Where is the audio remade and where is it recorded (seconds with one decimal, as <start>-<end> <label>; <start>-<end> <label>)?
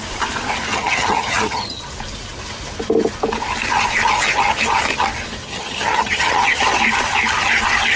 0.0-0.7 recorded; 0.7-1.8 remade; 1.8-5.4 recorded; 5.4-6.6 remade; 6.6-8.0 recorded